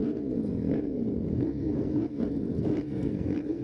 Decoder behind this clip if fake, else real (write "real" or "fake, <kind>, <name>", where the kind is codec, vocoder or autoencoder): fake, codec, SNAC